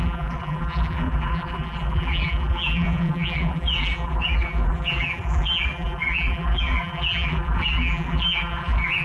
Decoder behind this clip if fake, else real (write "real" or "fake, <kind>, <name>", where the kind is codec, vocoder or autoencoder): fake, vocoder, BigVGAN v2